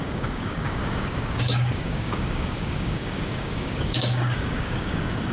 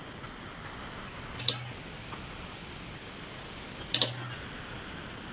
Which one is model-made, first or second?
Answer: first